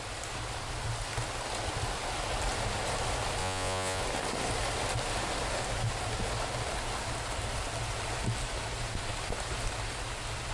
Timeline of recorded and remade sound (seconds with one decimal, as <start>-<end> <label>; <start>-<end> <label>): 0.0-3.4 recorded; 3.4-4.0 remade; 4.0-10.5 recorded